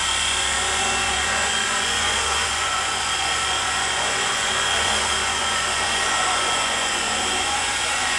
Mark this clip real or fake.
fake